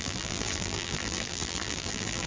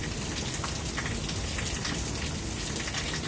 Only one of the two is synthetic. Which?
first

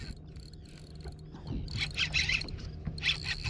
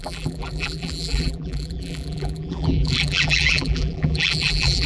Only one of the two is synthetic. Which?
second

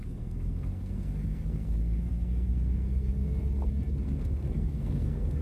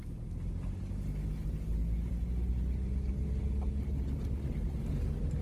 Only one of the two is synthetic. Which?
first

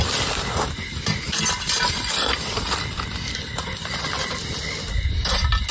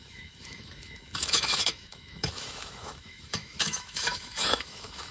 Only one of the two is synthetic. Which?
second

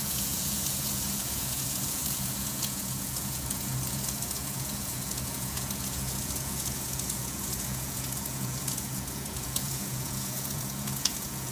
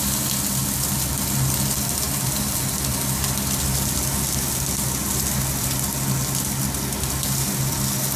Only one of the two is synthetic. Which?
first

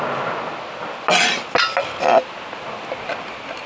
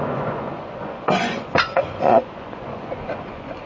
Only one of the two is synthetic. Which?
second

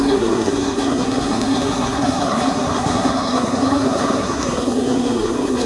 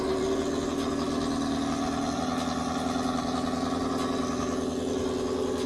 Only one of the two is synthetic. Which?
first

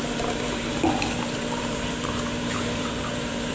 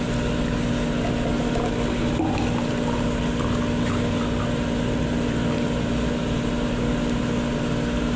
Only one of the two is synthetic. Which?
first